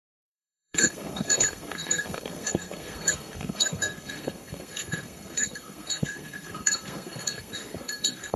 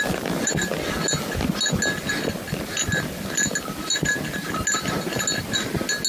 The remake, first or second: first